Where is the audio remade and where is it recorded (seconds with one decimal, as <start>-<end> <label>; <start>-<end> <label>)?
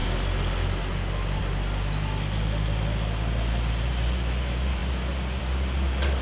0.0-6.2 recorded